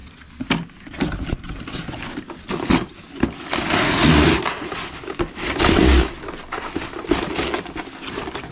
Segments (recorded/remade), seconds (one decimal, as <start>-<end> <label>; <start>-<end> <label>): 0.0-8.5 recorded